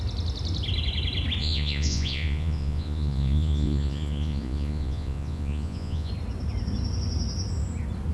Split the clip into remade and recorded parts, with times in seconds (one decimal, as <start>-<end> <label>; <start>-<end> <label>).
0.0-1.4 recorded; 1.4-6.1 remade; 6.1-8.1 recorded